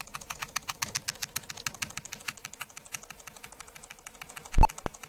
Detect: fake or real real